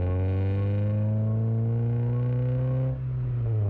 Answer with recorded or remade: recorded